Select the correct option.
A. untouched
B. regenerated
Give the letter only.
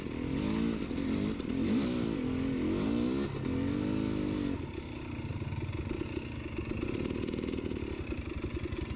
A